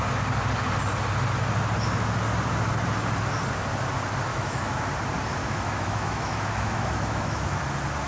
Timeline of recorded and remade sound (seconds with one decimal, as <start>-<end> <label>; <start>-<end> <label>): 0.0-4.3 recorded; 4.3-4.9 remade; 4.9-5.4 recorded; 5.4-7.6 remade; 7.6-8.1 recorded